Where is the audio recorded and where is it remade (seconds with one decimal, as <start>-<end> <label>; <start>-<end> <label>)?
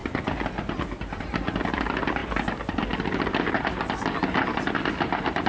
0.0-5.5 recorded